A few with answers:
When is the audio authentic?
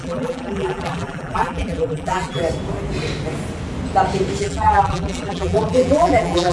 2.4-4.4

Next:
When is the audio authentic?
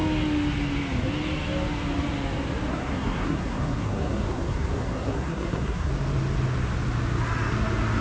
0.0-2.7; 5.9-8.0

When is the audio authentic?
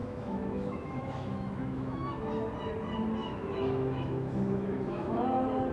2.2-3.2; 5.2-5.7